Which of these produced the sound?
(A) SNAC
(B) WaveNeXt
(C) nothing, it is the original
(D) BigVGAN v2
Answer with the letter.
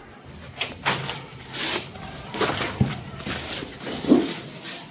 C